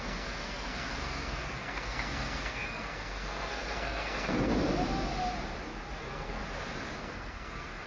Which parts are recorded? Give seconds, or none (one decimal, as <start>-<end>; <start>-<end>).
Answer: 4.5-6.0; 6.4-7.0